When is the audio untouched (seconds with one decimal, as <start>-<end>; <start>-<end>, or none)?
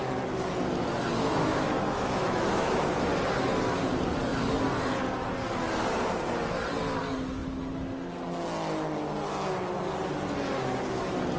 0.0-1.1; 3.0-11.4